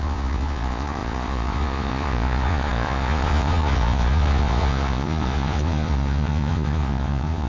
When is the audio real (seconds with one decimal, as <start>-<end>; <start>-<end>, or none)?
none